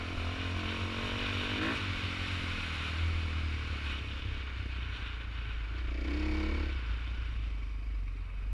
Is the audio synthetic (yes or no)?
no